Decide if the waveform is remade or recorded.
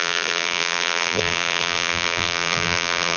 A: remade